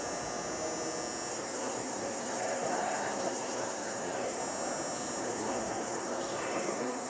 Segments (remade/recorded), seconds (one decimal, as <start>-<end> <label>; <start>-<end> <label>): 0.0-1.3 recorded; 1.3-4.4 remade; 4.4-5.2 recorded; 5.2-7.1 remade